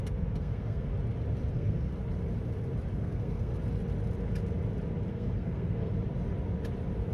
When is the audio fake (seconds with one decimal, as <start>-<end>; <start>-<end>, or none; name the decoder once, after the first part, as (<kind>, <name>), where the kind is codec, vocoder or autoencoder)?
0.0-0.9 (codec, SNAC); 1.5-1.9; 2.9-3.5; 5.1-5.9